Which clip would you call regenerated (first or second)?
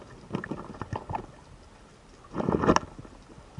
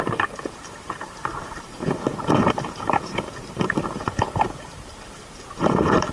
second